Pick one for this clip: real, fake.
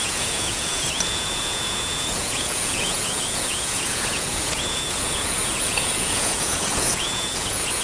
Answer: fake